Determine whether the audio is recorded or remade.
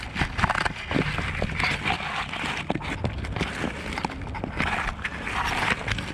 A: recorded